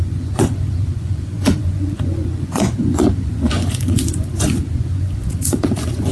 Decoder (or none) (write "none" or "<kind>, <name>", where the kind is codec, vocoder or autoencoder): vocoder, Vocos